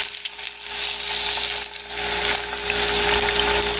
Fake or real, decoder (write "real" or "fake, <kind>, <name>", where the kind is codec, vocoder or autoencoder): real